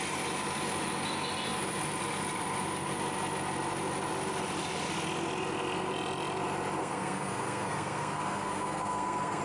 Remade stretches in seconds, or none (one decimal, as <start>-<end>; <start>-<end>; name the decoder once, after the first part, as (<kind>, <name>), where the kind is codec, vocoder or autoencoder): 6.8-9.4 (codec, SNAC)